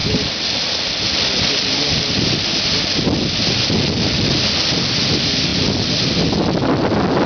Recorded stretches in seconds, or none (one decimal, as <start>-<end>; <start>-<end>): 0.0-7.3